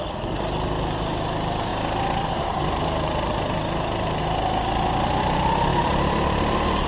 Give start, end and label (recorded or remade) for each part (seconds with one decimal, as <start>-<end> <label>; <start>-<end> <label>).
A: 0.0-6.9 recorded